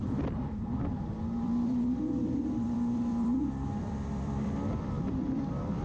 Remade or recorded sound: remade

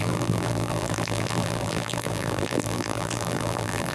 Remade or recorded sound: remade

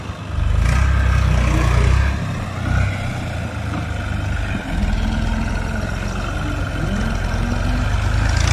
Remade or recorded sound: recorded